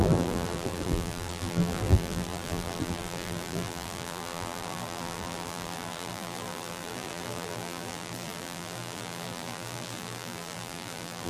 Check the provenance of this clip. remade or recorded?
remade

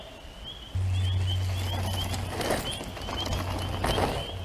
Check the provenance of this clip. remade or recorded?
recorded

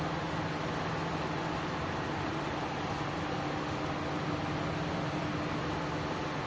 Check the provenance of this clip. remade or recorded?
recorded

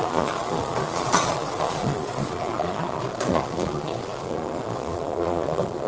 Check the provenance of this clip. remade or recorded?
remade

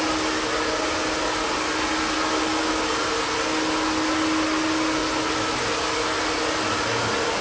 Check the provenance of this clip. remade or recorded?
recorded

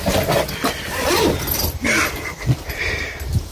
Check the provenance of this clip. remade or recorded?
recorded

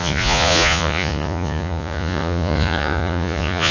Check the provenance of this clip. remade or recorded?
remade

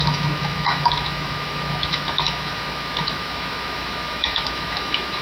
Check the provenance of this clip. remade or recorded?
remade